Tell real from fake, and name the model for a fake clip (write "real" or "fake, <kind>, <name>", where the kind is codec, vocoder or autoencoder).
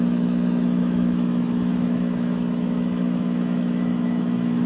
fake, autoencoder, DAC-VAE